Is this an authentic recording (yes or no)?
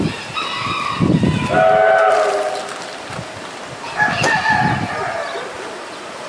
yes